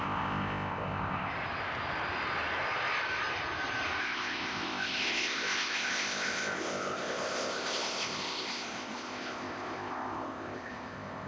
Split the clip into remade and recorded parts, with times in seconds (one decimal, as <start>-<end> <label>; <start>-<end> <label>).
0.0-1.3 remade; 1.3-4.0 recorded; 4.0-11.3 remade

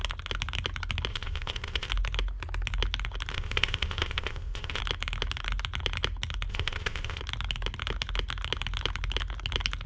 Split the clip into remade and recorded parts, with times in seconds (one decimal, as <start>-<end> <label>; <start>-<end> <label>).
0.0-1.1 recorded; 1.1-1.9 remade; 1.9-3.3 recorded; 3.3-4.8 remade; 4.8-6.5 recorded; 6.5-7.2 remade; 7.2-9.9 recorded

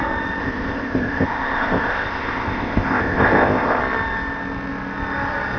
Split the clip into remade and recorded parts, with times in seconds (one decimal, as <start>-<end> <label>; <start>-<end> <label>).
0.0-0.4 recorded; 0.4-3.8 remade; 3.8-5.6 recorded

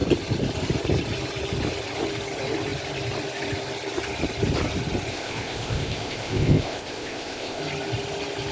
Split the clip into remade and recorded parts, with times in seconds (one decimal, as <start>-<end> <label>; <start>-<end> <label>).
0.0-5.1 recorded; 5.1-7.6 remade; 7.6-8.5 recorded

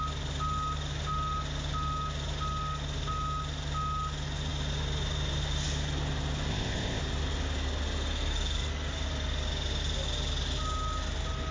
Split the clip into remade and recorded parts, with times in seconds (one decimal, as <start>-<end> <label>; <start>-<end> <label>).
0.0-6.5 recorded; 6.5-7.0 remade; 7.0-11.5 recorded

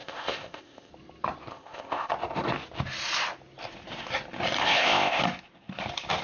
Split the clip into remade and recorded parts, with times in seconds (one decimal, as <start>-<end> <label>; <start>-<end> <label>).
0.0-0.9 remade; 0.9-1.5 recorded; 1.5-2.1 remade; 2.1-4.6 recorded; 4.6-5.2 remade; 5.2-6.2 recorded